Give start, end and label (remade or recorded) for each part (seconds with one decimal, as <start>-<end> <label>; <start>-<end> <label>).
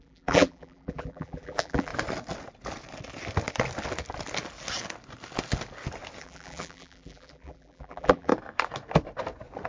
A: 0.0-1.9 remade; 1.9-6.2 recorded; 6.2-8.3 remade; 8.3-9.7 recorded